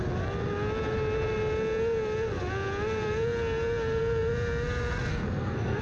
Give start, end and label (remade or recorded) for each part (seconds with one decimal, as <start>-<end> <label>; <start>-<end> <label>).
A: 0.0-5.1 recorded; 5.1-5.8 remade